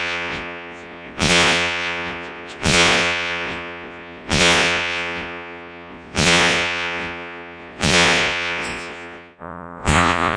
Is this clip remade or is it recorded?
remade